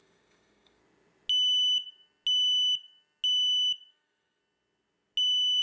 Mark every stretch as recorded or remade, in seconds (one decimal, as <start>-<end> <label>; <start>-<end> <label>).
0.0-0.8 remade; 0.8-3.9 recorded; 3.9-4.4 remade; 4.4-5.6 recorded